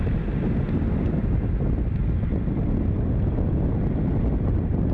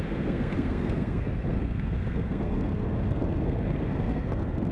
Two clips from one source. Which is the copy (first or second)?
second